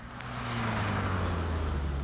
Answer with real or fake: real